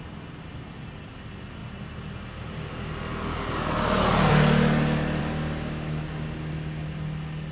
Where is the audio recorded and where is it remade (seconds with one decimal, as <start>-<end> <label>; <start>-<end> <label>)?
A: 0.0-7.5 recorded